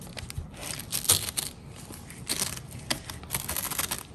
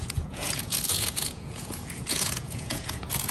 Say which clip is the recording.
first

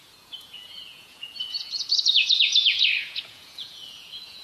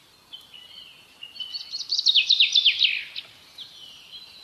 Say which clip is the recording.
second